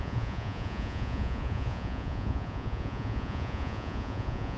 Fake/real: fake